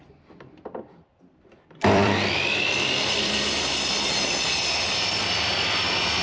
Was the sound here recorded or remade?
remade